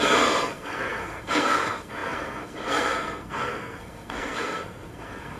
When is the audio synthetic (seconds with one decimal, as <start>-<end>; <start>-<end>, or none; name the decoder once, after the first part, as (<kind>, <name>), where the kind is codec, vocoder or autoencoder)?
0.0-5.4 (codec, SNAC)